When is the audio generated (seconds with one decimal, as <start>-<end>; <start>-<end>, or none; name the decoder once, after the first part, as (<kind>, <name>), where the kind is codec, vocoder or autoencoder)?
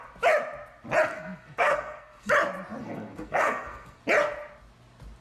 1.1-2.3 (codec, SNAC); 2.8-4.0